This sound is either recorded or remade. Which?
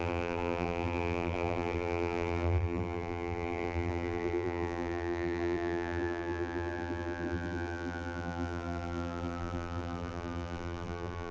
remade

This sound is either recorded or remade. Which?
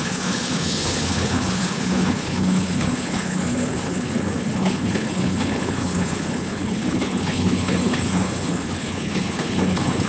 remade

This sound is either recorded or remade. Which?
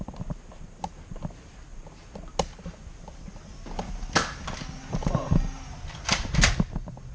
recorded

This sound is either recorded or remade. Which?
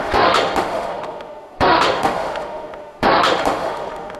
remade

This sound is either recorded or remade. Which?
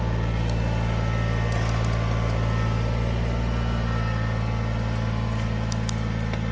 recorded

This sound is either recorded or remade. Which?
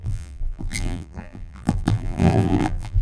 remade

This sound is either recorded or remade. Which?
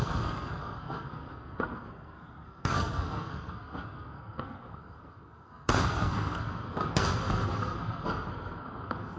remade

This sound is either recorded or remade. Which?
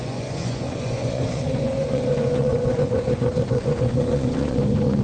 remade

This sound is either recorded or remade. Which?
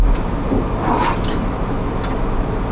recorded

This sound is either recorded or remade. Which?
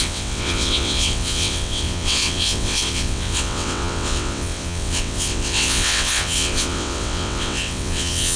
remade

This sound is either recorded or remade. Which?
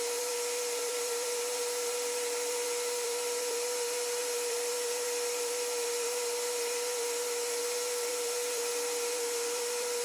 remade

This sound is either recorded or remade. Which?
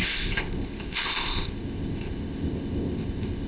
remade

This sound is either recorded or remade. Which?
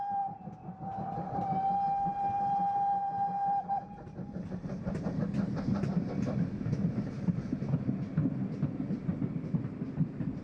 recorded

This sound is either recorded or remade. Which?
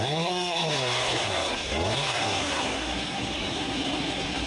remade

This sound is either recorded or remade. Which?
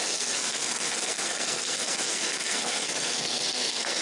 remade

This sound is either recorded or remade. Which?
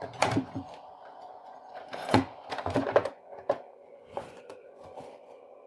remade